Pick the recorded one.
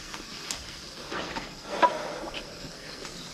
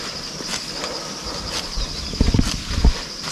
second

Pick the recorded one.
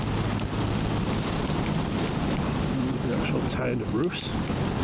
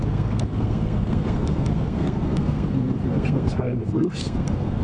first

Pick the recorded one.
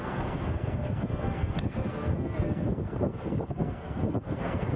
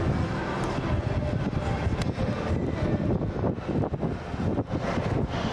second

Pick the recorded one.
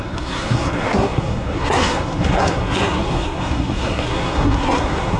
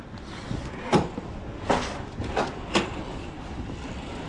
second